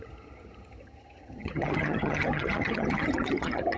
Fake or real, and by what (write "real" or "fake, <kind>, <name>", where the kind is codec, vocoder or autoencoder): fake, vocoder, HiFi-GAN